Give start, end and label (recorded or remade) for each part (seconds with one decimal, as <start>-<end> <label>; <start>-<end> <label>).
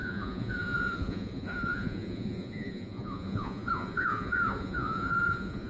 0.0-5.7 remade